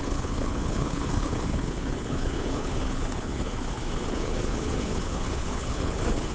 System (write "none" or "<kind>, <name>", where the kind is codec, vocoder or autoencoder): codec, HILCodec